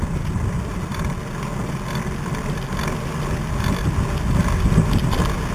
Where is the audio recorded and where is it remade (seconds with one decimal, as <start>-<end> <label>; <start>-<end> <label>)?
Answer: 0.0-5.5 recorded

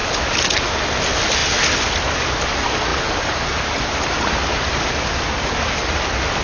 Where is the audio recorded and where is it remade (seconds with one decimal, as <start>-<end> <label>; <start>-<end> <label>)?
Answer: 0.0-2.9 recorded; 2.9-4.8 remade; 4.8-6.4 recorded

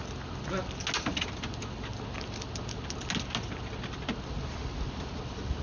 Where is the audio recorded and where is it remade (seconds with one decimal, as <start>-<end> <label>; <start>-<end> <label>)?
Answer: 0.0-5.6 recorded

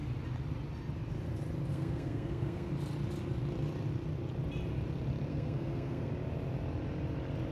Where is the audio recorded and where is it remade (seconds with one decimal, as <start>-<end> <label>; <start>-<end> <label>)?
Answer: 0.0-1.7 recorded; 1.7-2.7 remade; 2.7-5.3 recorded; 5.3-6.1 remade; 6.1-7.5 recorded

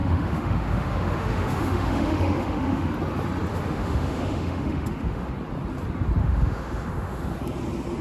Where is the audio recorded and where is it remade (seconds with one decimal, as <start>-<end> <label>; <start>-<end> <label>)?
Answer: 0.0-2.9 remade; 2.9-3.5 recorded; 3.5-5.3 remade; 5.3-6.2 recorded; 6.2-7.3 remade; 7.3-8.0 recorded

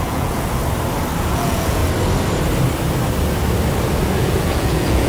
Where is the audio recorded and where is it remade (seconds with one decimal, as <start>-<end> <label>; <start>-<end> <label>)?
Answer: 0.0-0.6 remade; 0.6-1.2 recorded; 1.2-1.8 remade; 1.8-4.2 recorded; 4.2-5.1 remade

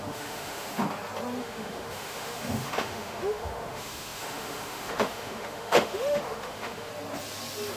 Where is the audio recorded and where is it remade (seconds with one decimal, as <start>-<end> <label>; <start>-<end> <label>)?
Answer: 0.0-0.8 remade; 0.8-1.4 recorded; 1.4-6.9 remade; 6.9-7.8 recorded

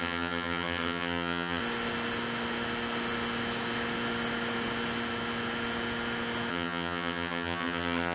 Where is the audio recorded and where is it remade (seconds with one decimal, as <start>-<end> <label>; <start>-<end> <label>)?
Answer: 0.0-1.6 remade; 1.6-6.5 recorded; 6.5-8.1 remade